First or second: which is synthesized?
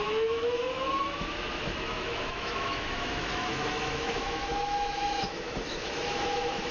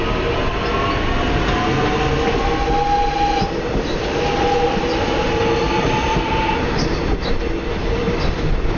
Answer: first